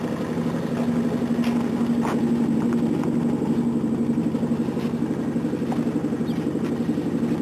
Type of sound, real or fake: real